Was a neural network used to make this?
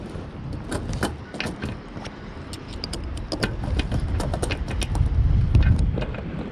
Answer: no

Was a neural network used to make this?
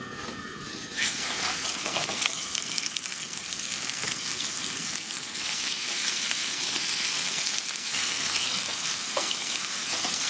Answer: yes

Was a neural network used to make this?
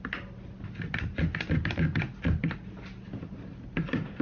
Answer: no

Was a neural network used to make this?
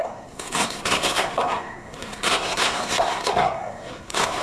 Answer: yes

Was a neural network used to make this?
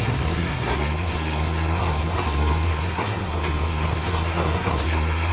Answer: yes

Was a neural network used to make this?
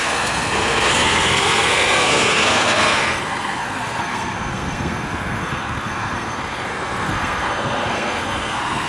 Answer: yes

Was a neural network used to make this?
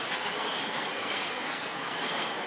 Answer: yes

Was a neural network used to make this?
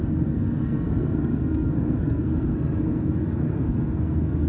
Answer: yes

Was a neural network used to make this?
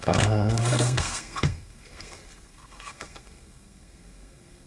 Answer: yes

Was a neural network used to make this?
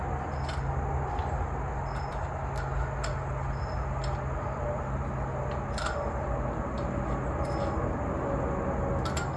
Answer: no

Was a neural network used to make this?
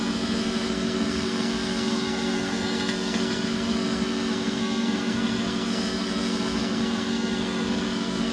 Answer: yes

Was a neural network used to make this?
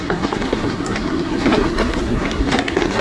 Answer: yes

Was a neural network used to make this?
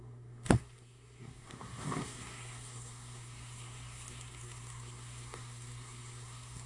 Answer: yes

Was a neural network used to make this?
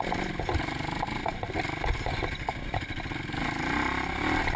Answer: no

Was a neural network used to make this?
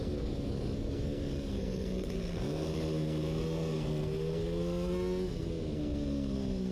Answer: yes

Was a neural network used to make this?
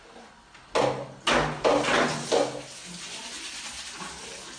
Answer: no